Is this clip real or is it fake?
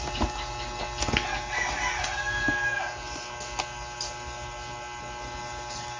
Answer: real